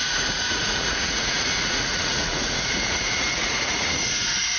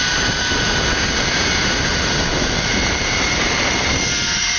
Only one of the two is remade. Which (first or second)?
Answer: first